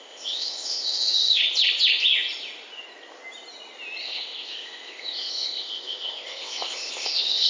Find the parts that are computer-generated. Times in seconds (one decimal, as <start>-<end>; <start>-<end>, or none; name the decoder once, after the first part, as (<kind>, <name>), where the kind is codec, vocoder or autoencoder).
0.0-1.4 (codec, ZipCodec); 4.0-7.5